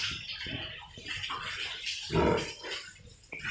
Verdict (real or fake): real